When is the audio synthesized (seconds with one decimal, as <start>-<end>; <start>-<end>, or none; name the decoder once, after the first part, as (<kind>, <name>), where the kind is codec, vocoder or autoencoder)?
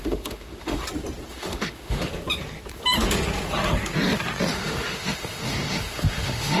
0.0-0.8 (autoencoder, DAC-VAE); 1.3-2.1; 4.5-6.6